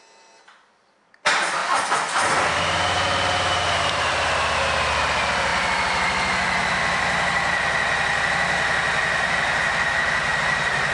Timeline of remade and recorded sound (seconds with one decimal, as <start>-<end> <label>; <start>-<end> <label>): 0.0-10.9 recorded